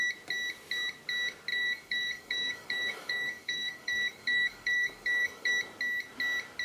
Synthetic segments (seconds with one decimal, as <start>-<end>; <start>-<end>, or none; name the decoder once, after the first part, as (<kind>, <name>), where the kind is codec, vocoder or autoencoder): 1.5-5.5 (codec, DAC)